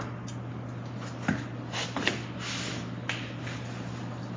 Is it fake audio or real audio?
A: real